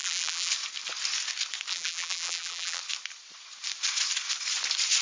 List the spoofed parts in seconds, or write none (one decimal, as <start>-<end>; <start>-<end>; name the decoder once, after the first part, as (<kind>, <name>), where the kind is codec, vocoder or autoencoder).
0.0-0.5 (vocoder, BigVGAN v2); 1.7-2.8